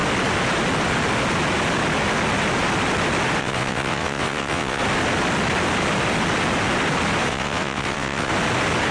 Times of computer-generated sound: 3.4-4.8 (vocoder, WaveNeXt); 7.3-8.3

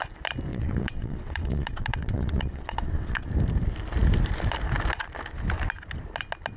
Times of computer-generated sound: 0.5-3.3 (vocoder, WaveNeXt)